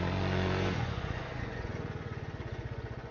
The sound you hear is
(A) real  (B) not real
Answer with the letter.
B